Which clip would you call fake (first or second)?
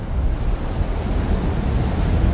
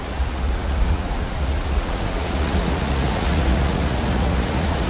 second